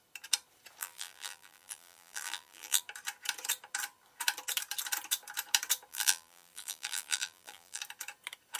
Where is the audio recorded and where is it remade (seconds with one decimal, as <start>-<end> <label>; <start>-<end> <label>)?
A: 0.0-0.8 recorded; 0.8-2.8 remade; 2.8-5.9 recorded; 5.9-7.8 remade; 7.8-8.6 recorded